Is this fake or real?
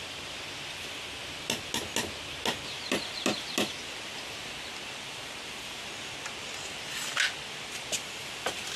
real